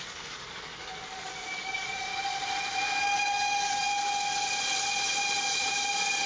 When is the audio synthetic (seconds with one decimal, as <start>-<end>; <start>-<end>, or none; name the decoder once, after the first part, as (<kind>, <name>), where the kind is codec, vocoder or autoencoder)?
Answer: 0.0-2.1 (codec, DAC); 3.0-3.9